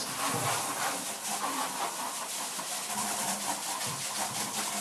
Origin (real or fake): real